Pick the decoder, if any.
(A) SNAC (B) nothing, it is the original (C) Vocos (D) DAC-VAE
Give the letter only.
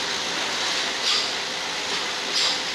B